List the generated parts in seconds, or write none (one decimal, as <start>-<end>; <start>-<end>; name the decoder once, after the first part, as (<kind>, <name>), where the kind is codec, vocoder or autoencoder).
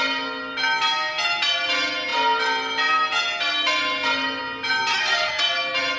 4.9-5.4 (codec, SNAC)